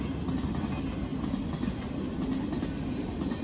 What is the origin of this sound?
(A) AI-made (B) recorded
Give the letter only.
B